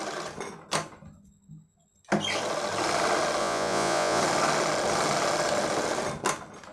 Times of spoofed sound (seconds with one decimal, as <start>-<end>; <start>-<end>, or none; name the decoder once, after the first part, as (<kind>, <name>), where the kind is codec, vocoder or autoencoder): 3.4-4.2 (vocoder, Vocos)